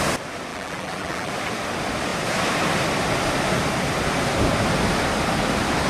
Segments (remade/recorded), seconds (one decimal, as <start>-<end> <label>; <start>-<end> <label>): 0.0-0.5 recorded; 0.5-1.3 remade; 1.3-5.9 recorded